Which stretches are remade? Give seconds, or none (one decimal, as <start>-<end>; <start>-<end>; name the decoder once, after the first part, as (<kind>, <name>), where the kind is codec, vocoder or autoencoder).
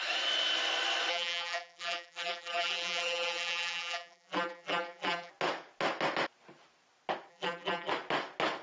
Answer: 1.1-5.3 (vocoder, BigVGAN v2); 7.3-7.9